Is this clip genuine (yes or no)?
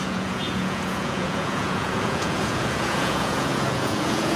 no